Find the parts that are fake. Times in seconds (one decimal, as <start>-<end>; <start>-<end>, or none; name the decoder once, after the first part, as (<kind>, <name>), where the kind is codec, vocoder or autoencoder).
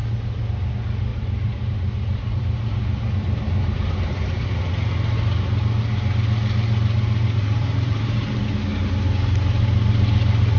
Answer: 1.1-4.6 (vocoder, BigVGAN v2); 7.4-8.4